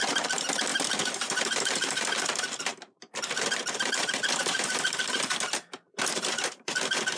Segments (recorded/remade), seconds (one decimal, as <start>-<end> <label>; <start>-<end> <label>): 0.0-7.2 remade